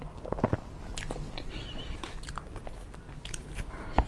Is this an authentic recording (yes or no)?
yes